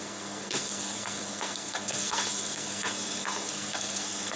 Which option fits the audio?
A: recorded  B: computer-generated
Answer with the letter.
B